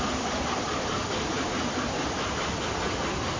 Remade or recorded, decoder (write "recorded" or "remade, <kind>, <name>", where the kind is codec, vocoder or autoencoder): recorded